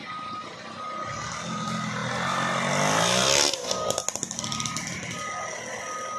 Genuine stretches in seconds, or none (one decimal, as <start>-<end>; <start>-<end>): 0.0-6.2